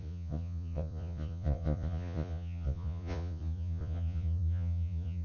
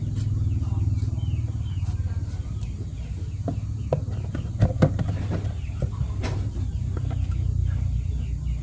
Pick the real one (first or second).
second